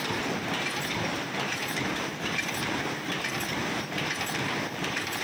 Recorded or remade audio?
remade